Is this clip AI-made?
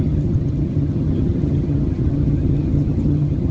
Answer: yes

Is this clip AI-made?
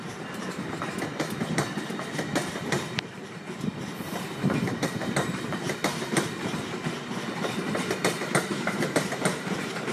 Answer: yes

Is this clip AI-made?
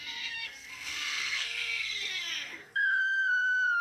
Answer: yes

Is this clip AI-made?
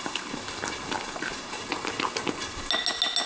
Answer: no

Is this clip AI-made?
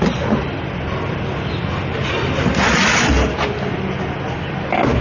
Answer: no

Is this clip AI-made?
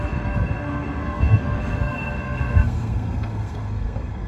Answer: yes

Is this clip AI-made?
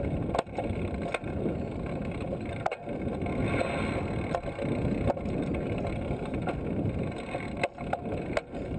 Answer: no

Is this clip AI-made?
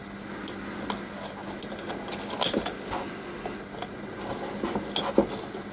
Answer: no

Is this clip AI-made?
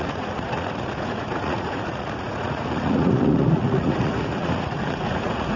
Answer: yes